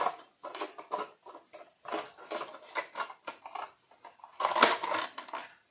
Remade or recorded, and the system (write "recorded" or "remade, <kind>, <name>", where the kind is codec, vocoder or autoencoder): recorded